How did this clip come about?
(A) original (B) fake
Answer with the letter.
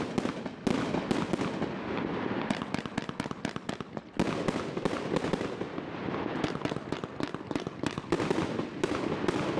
A